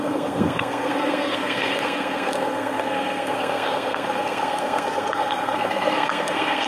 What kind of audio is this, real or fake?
fake